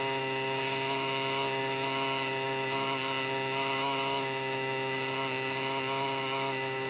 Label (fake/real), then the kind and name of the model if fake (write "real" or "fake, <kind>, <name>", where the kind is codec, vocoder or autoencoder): fake, autoencoder, DAC-VAE